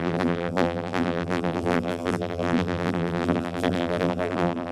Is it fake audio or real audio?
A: fake